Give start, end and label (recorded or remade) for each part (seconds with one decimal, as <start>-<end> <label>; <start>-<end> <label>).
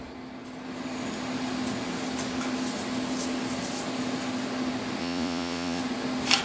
0.0-5.0 recorded; 5.0-5.8 remade; 5.8-6.4 recorded